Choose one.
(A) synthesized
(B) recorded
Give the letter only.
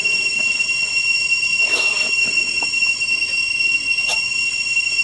B